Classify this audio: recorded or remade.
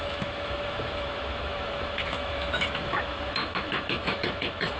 remade